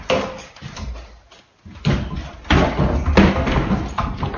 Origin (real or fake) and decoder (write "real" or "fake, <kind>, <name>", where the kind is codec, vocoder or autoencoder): real